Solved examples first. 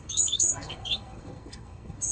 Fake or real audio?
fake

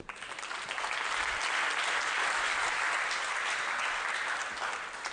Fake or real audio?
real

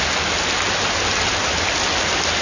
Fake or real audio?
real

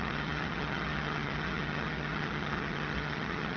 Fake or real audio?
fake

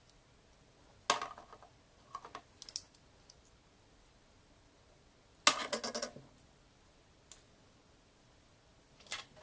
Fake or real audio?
real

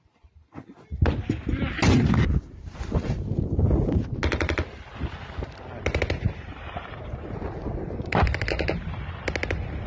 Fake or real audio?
real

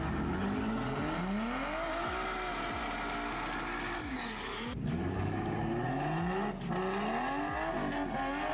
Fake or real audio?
real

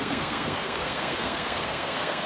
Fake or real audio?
fake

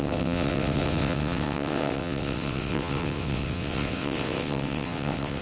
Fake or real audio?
fake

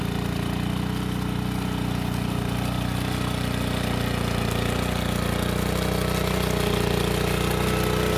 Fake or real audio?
real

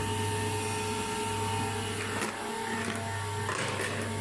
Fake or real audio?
real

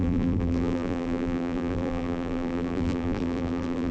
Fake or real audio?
fake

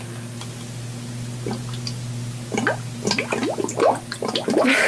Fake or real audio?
real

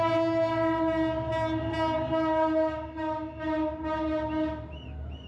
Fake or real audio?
real